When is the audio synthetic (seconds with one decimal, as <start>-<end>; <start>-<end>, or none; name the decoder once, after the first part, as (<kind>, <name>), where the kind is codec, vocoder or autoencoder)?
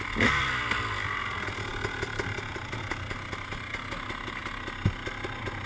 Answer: none